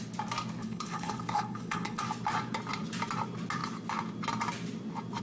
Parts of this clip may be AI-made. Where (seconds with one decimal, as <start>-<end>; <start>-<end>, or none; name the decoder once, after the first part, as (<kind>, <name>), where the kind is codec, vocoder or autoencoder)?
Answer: 0.6-2.0 (codec, HILCodec)